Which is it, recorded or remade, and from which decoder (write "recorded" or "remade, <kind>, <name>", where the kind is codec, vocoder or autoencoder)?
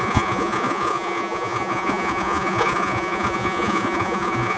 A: remade, vocoder, Vocos